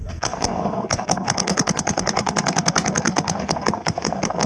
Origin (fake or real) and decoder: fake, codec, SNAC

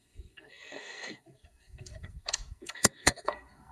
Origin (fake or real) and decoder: fake, codec, SNAC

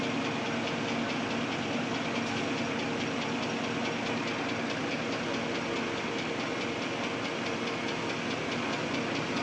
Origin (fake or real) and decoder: real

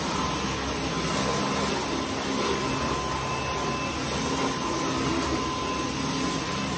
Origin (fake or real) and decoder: real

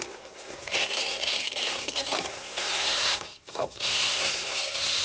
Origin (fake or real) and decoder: fake, codec, SNAC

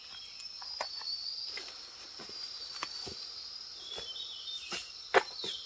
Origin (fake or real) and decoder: real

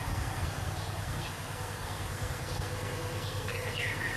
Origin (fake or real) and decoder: fake, codec, SNAC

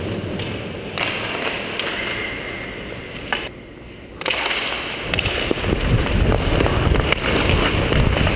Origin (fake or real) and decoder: real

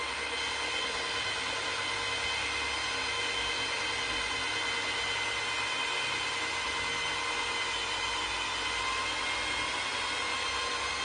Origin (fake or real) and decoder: real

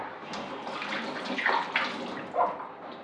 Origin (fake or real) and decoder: real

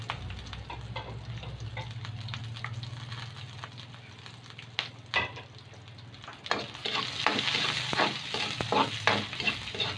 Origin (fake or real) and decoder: real